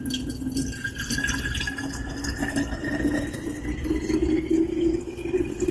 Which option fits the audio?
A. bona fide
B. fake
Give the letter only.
A